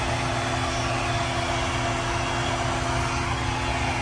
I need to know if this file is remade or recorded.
recorded